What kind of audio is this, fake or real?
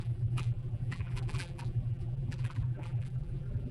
fake